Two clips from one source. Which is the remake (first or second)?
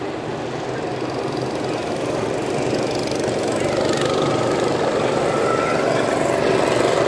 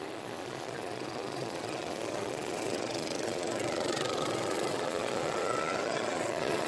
second